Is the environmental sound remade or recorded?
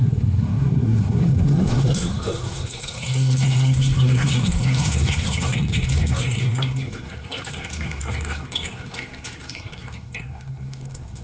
remade